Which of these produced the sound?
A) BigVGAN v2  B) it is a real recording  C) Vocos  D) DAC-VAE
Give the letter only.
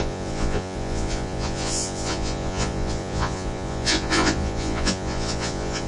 C